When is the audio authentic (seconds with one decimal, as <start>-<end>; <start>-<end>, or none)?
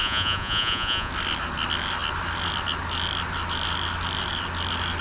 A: 1.1-5.0